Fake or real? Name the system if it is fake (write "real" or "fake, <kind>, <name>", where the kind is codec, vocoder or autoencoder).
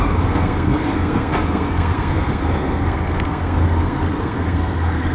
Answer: fake, codec, SNAC